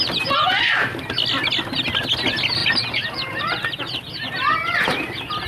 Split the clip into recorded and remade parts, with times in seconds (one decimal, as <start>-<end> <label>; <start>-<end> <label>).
0.0-2.6 recorded; 2.6-3.4 remade; 3.4-5.5 recorded